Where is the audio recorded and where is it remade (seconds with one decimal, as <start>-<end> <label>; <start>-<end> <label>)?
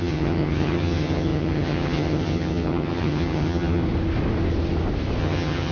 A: 0.0-3.8 remade; 3.8-5.2 recorded; 5.2-5.7 remade